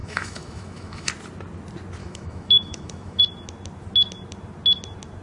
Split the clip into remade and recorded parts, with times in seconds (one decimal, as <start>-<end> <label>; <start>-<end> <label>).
0.0-1.1 remade; 1.1-2.0 recorded; 2.0-3.2 remade; 3.2-5.2 recorded

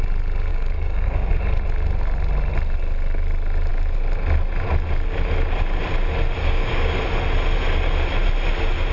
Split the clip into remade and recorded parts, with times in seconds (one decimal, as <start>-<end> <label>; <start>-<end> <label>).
0.0-0.5 recorded; 0.5-1.4 remade; 1.4-6.4 recorded; 6.4-7.0 remade; 7.0-8.9 recorded

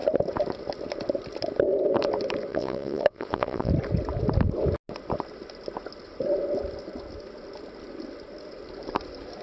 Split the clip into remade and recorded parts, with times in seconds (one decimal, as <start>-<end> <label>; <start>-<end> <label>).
0.0-2.5 recorded; 2.5-3.7 remade; 3.7-9.4 recorded

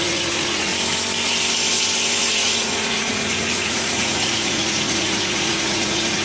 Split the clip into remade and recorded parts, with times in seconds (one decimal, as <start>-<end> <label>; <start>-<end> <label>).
0.0-0.7 remade; 0.7-2.3 recorded; 2.3-6.2 remade

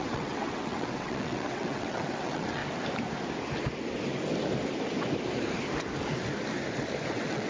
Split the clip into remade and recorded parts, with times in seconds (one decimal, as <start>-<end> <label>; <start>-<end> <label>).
0.0-2.6 remade; 2.6-7.1 recorded; 7.1-7.5 remade

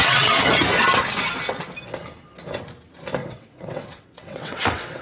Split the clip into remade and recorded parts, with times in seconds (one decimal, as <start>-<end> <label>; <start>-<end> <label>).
0.0-0.5 remade; 0.5-3.2 recorded; 3.2-5.0 remade